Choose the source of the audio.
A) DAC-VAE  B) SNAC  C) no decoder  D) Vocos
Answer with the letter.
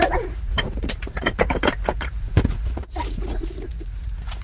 D